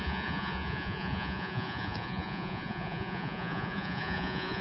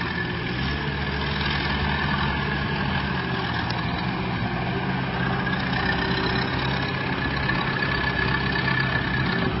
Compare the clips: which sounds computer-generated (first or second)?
first